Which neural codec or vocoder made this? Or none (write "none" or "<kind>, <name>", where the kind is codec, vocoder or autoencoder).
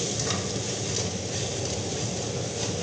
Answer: none